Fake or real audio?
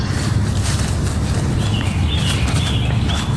real